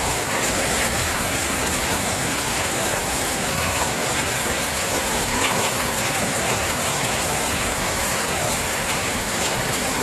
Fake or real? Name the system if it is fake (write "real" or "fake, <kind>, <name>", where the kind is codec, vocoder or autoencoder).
fake, codec, SNAC